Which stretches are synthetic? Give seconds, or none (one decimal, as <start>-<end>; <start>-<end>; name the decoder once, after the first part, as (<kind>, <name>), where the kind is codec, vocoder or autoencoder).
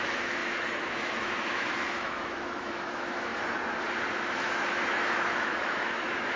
0.0-3.3 (autoencoder, DAC-VAE); 4.1-6.4